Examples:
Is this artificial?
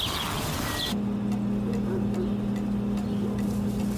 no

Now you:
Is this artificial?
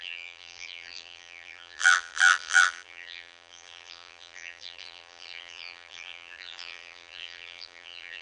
yes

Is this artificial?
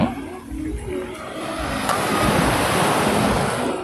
no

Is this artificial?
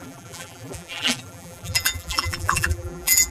yes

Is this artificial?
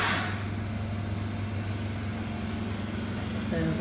no